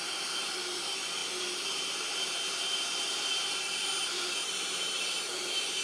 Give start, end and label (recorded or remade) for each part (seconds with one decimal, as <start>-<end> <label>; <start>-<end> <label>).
0.0-5.8 remade